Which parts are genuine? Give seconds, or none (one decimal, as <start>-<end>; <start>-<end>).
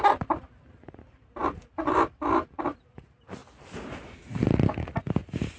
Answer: 3.4-5.0